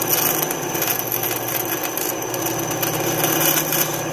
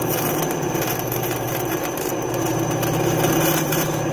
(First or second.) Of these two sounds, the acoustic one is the first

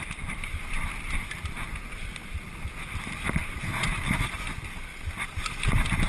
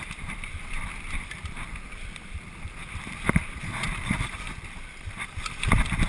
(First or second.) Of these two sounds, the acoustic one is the first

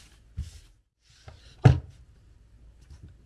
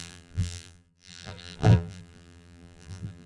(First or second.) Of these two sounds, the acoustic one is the first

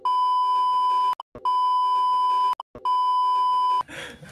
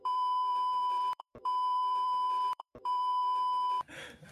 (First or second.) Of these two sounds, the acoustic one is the first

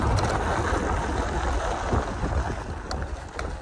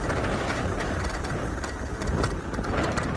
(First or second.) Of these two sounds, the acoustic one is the first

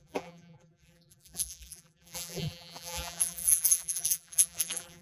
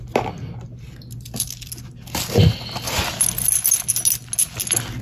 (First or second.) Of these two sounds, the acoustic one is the second